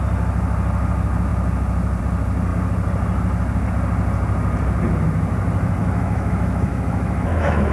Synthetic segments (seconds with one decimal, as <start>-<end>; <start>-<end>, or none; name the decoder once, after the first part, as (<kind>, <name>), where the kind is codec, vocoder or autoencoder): 5.8-7.7 (autoencoder, DAC-VAE)